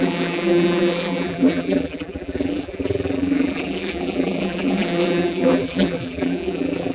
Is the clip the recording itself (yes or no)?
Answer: no